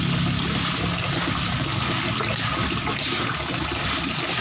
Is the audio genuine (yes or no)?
yes